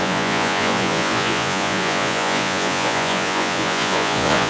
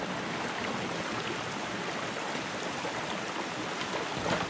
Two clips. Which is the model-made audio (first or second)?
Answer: first